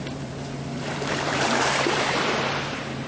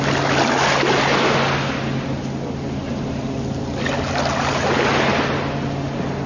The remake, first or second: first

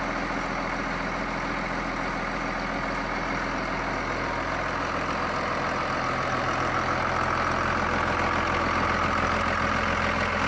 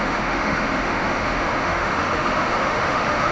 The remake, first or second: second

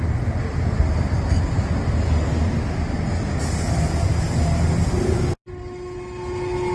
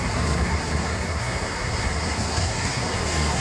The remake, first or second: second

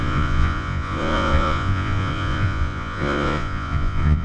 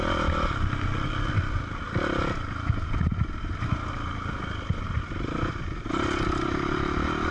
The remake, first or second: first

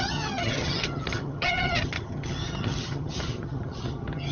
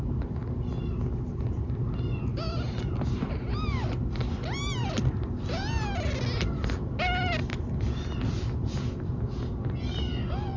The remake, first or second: first